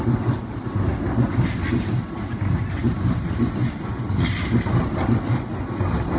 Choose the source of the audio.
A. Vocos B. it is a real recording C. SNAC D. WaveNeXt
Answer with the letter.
B